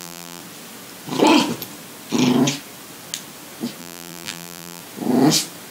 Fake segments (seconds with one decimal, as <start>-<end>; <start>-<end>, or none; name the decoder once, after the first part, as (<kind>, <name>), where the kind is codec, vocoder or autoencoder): 0.0-0.4 (vocoder, BigVGAN v2); 3.8-4.8